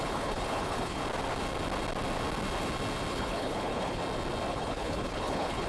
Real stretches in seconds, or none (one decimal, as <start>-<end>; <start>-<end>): 1.0-3.1; 4.0-4.5